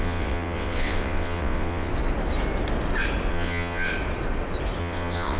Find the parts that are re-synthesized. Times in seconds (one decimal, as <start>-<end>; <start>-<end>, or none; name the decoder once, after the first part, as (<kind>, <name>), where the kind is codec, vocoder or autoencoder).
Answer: 0.0-1.9 (vocoder, WaveNeXt); 3.3-3.9; 4.8-5.4